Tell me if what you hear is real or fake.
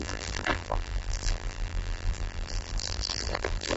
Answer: fake